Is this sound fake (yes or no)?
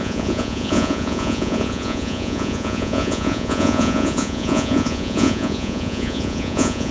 yes